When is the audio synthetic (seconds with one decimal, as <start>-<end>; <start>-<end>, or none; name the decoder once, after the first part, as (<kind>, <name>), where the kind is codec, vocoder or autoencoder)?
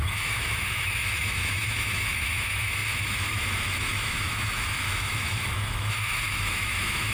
0.0-7.1 (autoencoder, DAC-VAE)